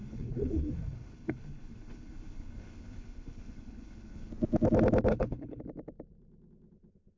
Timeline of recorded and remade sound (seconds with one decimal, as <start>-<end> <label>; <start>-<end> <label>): 0.0-4.3 remade; 4.3-5.1 recorded; 5.1-5.6 remade; 5.6-7.2 recorded